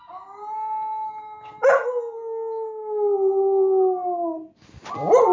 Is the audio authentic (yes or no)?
yes